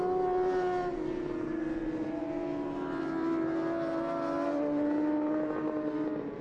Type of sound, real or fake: real